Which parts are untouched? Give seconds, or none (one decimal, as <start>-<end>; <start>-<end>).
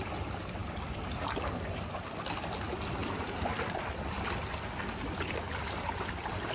0.0-6.5